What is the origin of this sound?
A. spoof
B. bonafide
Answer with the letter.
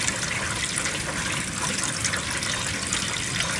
B